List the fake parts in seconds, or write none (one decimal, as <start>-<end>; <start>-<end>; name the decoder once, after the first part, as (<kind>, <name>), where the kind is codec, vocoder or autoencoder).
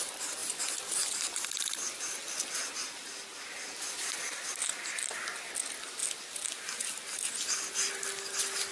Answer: none